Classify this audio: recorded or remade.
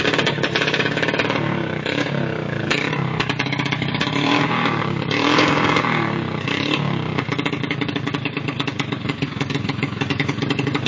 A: remade